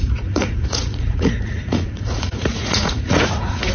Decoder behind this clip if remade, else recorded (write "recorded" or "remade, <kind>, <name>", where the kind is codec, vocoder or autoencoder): remade, vocoder, Vocos